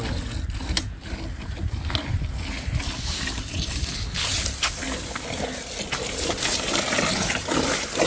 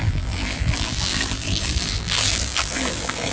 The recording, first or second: first